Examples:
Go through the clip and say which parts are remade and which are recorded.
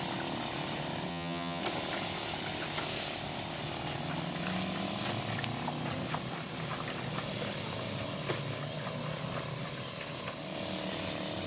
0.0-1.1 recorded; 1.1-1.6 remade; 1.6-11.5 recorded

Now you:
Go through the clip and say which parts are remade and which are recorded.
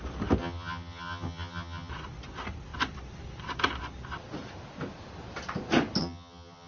0.0-0.4 recorded; 0.4-1.9 remade; 1.9-6.0 recorded; 6.0-6.7 remade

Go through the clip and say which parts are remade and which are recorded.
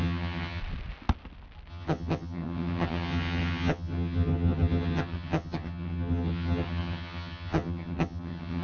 0.0-0.6 remade; 0.6-1.7 recorded; 1.7-8.6 remade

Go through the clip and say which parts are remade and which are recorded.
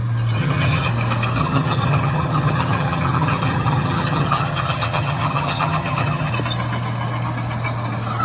0.0-0.4 recorded; 0.4-0.9 remade; 0.9-1.4 recorded; 1.4-6.3 remade; 6.3-8.2 recorded